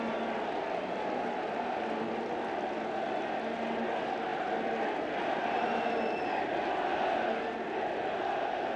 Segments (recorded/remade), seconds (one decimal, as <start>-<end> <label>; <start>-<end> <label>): 0.0-8.8 recorded